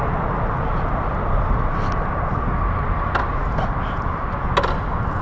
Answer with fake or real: real